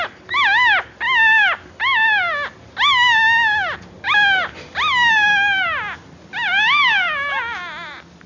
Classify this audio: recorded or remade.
recorded